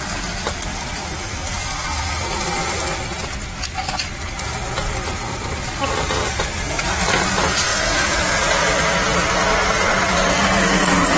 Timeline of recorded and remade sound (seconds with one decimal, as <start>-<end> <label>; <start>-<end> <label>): 0.0-6.2 recorded; 6.2-6.9 remade; 6.9-11.2 recorded